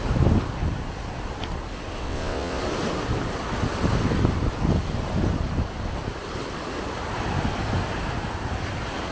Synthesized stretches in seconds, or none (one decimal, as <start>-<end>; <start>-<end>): 2.0-2.6